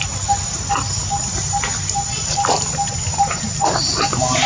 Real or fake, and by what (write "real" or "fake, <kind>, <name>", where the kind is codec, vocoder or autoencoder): real